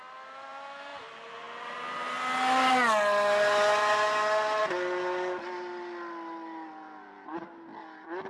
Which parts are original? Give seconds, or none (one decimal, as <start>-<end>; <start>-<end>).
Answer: 0.0-8.3